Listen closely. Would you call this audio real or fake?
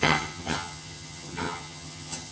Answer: fake